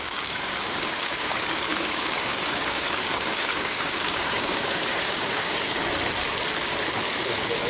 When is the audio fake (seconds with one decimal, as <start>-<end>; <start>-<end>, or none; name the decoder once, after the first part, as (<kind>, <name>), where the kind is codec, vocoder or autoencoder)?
0.0-5.8 (codec, DAC)